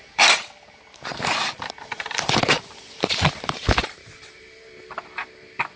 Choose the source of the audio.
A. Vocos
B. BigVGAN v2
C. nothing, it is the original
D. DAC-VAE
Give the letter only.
B